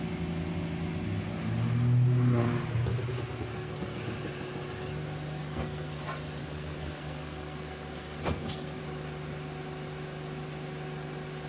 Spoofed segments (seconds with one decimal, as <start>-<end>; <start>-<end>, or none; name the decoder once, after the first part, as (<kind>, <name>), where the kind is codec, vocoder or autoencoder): 3.5-4.0 (codec, SNAC); 5.4-6.0; 6.4-8.8